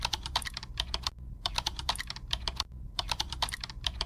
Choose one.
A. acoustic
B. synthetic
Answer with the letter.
B